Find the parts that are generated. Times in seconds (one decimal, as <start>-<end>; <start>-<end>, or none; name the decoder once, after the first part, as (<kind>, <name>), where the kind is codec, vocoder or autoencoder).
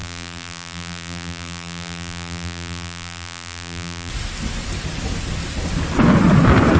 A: 0.0-4.1 (vocoder, BigVGAN v2)